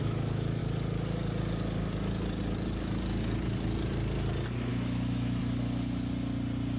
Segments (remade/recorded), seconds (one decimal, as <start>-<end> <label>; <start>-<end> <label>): 0.0-0.6 remade; 0.6-4.7 recorded; 4.7-5.4 remade; 5.4-6.8 recorded